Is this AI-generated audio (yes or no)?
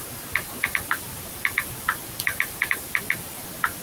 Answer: yes